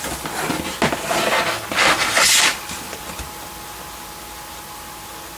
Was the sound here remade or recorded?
recorded